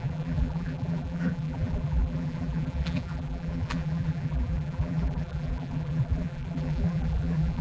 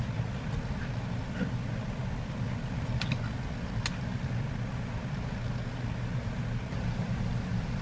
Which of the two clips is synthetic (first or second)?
first